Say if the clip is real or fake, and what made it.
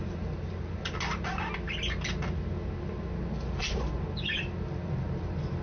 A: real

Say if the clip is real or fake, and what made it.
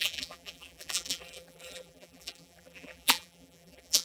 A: fake, vocoder, BigVGAN v2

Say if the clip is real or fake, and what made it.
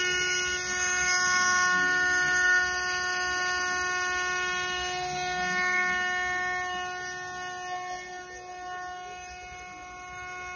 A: real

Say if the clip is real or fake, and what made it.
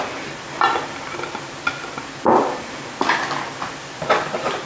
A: real